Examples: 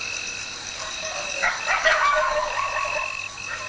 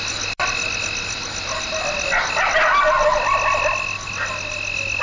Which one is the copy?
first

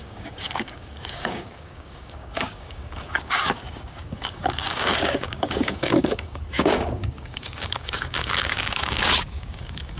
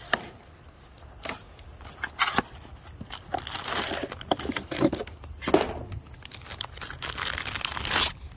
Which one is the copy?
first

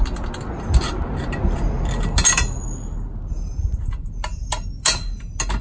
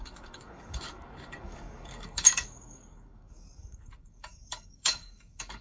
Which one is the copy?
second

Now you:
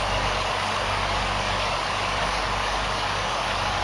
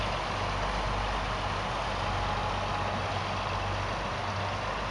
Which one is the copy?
first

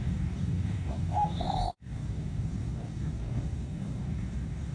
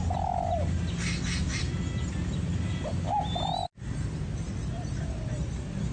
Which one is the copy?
first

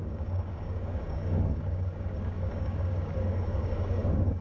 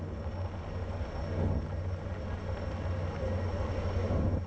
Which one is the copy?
first